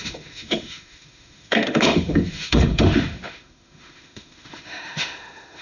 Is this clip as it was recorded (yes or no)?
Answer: no